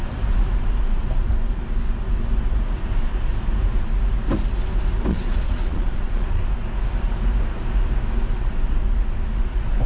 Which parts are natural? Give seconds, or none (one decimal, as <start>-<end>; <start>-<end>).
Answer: 0.0-5.1; 6.4-9.9